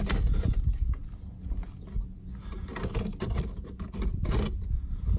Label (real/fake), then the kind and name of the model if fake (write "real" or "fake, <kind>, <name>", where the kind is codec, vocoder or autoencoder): real